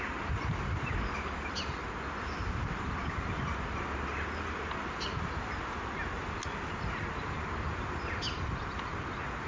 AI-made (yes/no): no